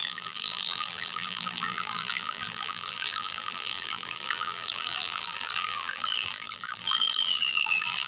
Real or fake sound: fake